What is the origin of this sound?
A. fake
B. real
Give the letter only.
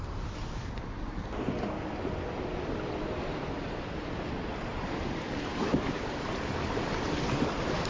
B